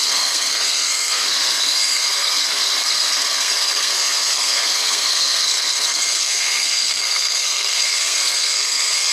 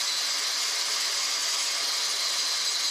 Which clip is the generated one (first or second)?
first